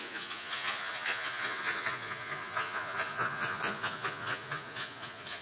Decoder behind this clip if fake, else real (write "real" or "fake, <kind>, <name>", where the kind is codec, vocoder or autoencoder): fake, vocoder, Vocos